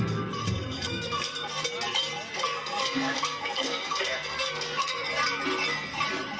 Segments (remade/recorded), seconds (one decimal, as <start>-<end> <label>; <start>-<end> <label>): 0.0-0.4 recorded; 0.4-1.6 remade; 1.6-2.3 recorded; 2.3-5.1 remade; 5.1-6.4 recorded